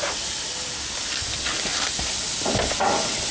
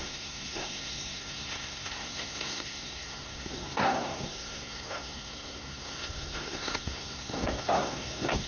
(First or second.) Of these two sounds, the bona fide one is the first